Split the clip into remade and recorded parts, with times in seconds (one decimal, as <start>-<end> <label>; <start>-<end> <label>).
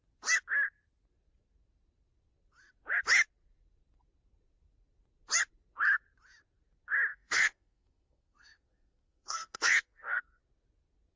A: 0.0-7.1 recorded; 7.1-10.4 remade; 10.4-11.2 recorded